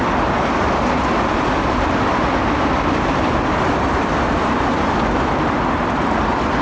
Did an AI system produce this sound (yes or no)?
yes